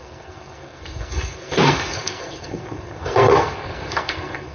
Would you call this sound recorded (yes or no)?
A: no